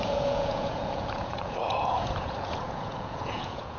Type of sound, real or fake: fake